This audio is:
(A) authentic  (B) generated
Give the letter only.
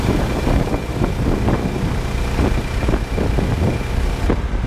A